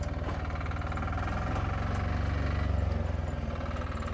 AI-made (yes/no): no